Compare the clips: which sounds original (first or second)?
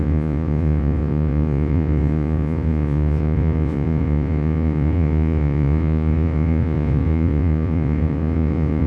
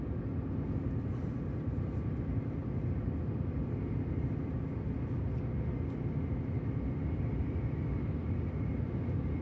second